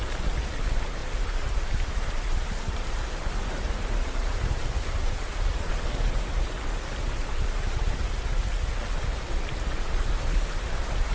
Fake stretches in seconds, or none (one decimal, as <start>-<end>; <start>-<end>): 1.0-5.7; 7.2-7.9

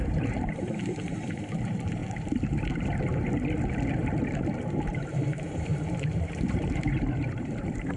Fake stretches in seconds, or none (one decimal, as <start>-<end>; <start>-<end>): 0.0-2.0; 4.7-8.0

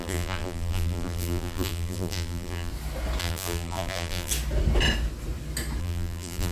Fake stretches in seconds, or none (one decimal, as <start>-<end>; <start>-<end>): 0.0-2.7; 3.2-4.3; 5.8-6.5

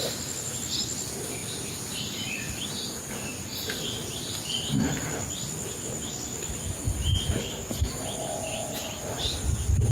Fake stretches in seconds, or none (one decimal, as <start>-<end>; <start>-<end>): 1.4-5.8; 8.8-9.5

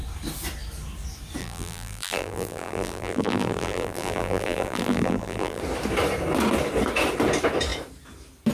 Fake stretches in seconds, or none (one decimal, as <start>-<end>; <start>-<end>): 1.4-5.6

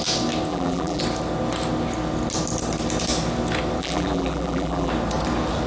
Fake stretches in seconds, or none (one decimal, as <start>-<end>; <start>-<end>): 0.5-1.0; 3.8-4.9